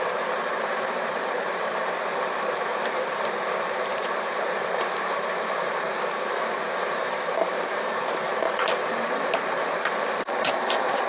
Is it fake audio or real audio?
fake